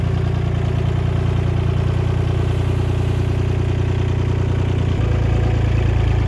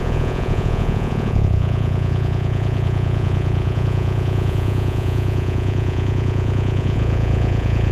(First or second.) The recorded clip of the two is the first